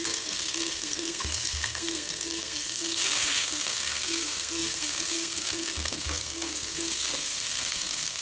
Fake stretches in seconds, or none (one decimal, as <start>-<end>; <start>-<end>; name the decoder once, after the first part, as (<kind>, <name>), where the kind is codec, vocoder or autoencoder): 0.0-8.2 (codec, SNAC)